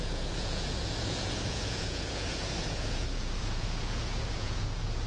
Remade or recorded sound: remade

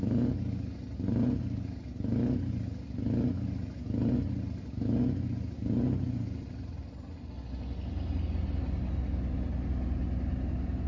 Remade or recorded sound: recorded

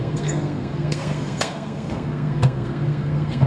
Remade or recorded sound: remade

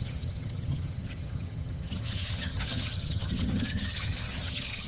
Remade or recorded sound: remade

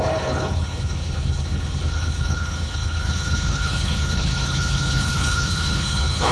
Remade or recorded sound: remade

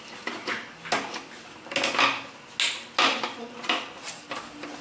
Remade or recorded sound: recorded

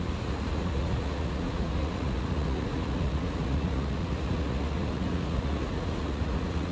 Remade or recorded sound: remade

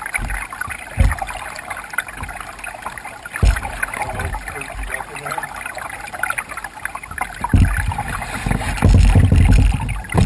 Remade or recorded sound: recorded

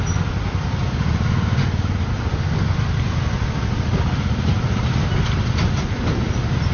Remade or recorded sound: recorded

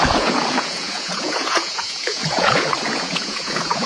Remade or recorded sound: remade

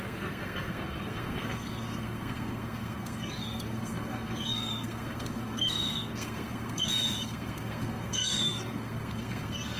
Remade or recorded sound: remade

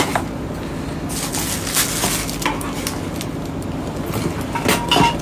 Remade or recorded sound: recorded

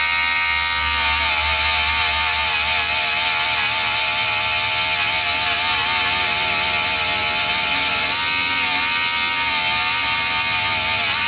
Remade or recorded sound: recorded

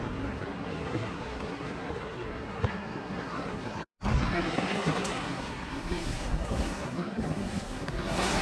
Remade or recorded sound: remade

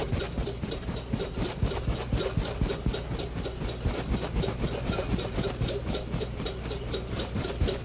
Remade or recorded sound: recorded